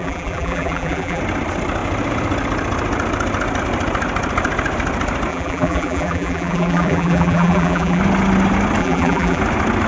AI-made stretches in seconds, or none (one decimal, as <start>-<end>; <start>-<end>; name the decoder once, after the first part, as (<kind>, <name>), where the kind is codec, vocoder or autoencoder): 0.0-1.2 (vocoder, BigVGAN v2); 5.3-8.0; 8.8-9.4